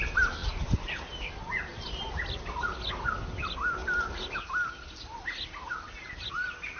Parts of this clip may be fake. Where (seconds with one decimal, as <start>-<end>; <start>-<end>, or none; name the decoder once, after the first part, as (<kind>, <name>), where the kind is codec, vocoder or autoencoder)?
none